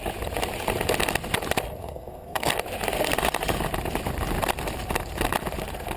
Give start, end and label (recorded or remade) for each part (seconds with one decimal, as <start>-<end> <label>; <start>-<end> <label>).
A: 0.0-1.8 recorded; 1.8-2.5 remade; 2.5-6.0 recorded